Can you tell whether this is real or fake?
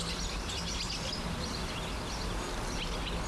real